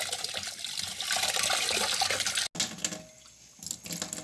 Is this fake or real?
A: real